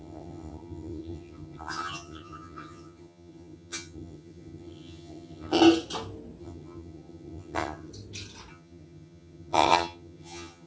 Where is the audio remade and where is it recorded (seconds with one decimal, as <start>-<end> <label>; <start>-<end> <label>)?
0.0-5.6 remade; 5.6-6.4 recorded; 6.4-7.9 remade; 7.9-8.5 recorded; 8.5-10.7 remade